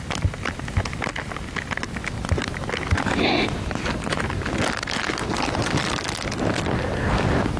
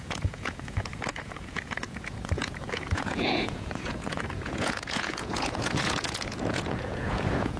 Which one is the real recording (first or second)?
first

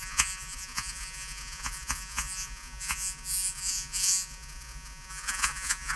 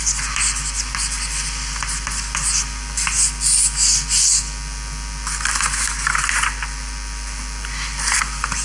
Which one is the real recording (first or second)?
second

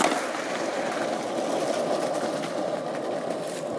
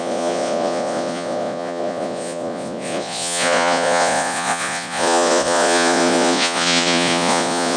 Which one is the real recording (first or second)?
first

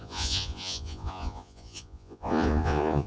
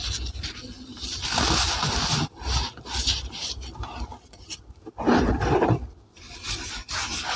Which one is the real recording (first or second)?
second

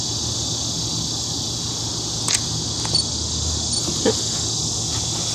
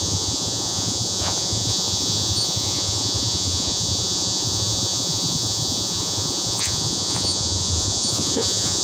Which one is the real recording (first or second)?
first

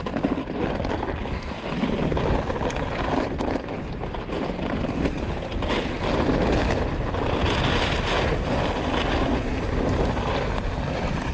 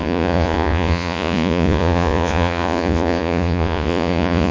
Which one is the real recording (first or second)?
first